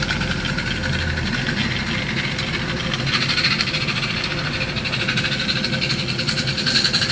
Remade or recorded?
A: recorded